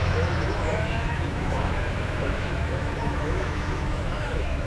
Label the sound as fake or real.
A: fake